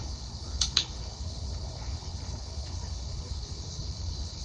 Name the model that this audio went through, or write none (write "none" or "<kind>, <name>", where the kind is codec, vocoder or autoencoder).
codec, HILCodec